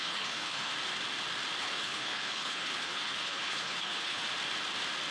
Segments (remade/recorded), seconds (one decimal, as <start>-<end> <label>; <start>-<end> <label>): 0.0-0.7 remade; 0.7-1.6 recorded; 1.6-4.2 remade; 4.2-5.1 recorded